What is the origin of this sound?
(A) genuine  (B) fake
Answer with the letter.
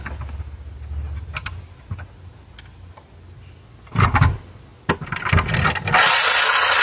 A